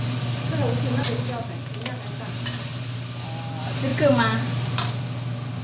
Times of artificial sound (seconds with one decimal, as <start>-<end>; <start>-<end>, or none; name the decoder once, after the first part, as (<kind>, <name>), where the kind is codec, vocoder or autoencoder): none